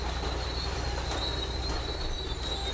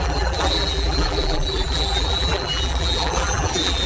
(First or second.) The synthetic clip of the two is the second